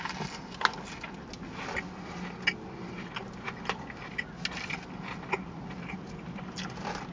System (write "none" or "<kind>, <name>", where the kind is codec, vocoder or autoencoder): none